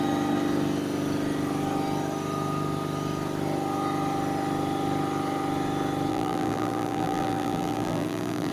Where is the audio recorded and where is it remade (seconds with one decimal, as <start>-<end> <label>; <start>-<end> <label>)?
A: 0.0-6.1 recorded; 6.1-8.5 remade